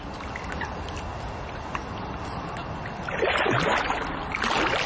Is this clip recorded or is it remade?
recorded